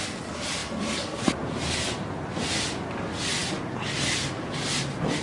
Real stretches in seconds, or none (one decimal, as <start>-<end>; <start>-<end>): 0.0-5.2